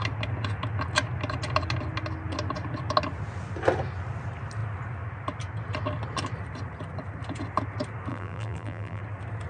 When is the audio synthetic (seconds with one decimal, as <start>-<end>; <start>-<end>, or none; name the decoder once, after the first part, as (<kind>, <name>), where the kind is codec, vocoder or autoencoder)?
8.1-9.0 (vocoder, BigVGAN v2)